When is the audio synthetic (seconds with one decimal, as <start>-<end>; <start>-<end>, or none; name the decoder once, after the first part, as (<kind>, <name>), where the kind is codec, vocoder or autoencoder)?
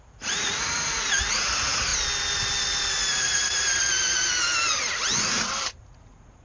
0.0-1.9 (vocoder, Vocos); 2.9-3.8; 5.8-6.4